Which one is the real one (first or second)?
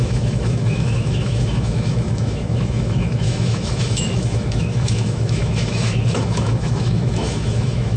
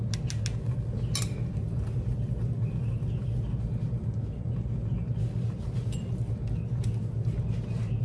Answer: second